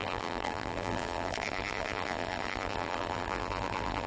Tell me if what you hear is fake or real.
fake